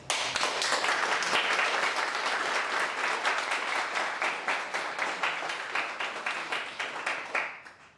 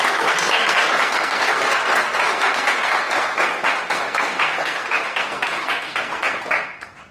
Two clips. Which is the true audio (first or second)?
first